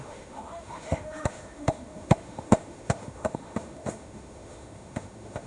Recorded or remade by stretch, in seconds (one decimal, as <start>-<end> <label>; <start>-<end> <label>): 0.0-5.5 remade